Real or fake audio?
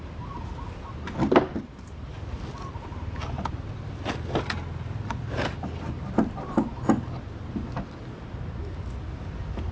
real